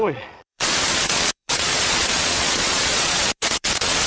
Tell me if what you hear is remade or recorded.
remade